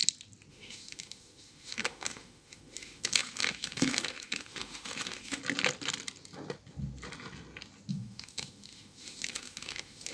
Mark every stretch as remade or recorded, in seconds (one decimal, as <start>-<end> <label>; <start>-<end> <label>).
0.0-0.5 recorded; 0.5-5.4 remade; 5.4-7.9 recorded; 7.9-10.1 remade